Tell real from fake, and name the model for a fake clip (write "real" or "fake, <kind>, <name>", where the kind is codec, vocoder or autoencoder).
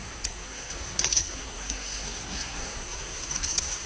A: fake, codec, SNAC